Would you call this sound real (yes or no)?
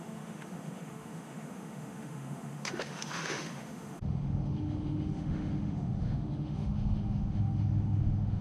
no